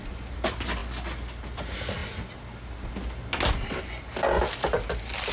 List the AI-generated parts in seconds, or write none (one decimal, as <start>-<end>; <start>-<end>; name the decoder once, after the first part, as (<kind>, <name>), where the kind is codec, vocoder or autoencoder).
none